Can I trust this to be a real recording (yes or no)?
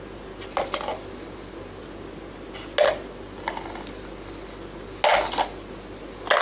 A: yes